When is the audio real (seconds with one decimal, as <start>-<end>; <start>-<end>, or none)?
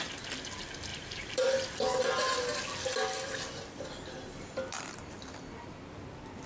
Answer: 0.0-0.9; 2.0-6.5